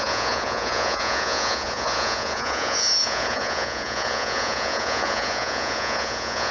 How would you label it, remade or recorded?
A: remade